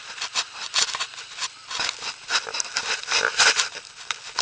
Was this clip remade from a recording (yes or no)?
no